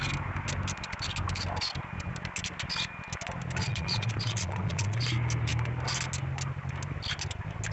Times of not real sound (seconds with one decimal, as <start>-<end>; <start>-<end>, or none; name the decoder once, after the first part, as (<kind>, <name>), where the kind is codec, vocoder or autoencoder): 3.6-5.0 (vocoder, Vocos)